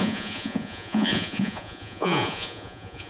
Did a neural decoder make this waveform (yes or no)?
yes